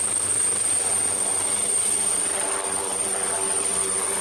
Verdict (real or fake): real